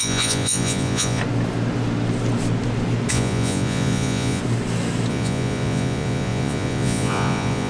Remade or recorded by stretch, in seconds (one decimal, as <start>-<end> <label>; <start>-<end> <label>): 0.0-1.2 remade; 1.2-3.1 recorded; 3.1-4.4 remade; 4.4-5.1 recorded; 5.1-7.7 remade